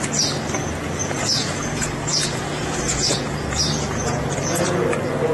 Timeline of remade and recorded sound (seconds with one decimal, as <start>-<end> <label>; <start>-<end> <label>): 0.0-1.0 recorded; 1.0-4.2 remade; 4.2-5.3 recorded